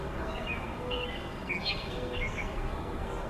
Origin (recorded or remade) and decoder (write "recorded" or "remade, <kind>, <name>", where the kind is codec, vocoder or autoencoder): remade, codec, SNAC